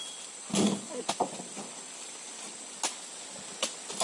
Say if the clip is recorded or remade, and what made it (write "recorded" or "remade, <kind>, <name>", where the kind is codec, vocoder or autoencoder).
recorded